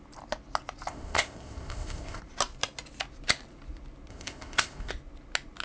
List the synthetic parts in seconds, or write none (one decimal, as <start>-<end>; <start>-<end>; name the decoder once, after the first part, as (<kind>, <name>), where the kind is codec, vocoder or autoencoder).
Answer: 0.9-2.2 (codec, ZipCodec); 4.1-4.9